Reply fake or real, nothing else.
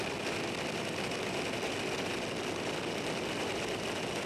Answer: real